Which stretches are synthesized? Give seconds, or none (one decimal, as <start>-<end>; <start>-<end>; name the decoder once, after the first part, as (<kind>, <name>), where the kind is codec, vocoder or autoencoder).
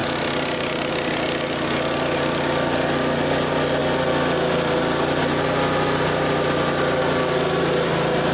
none